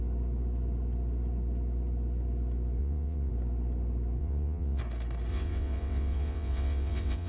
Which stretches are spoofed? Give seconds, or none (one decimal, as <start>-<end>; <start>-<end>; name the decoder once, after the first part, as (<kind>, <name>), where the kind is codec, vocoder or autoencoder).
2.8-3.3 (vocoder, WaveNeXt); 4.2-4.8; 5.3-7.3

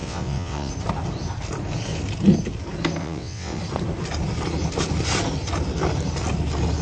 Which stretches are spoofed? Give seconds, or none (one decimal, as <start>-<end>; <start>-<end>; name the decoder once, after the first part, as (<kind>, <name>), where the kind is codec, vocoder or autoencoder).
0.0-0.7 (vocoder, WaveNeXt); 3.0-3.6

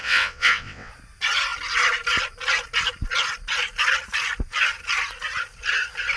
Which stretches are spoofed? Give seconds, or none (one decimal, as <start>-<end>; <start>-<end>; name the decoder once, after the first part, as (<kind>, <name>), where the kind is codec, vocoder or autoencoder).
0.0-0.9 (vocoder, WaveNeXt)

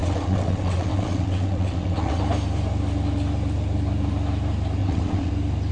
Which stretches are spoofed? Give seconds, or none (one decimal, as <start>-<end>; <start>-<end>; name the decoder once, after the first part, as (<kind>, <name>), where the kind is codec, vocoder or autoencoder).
0.0-2.2 (vocoder, WaveNeXt); 4.8-5.3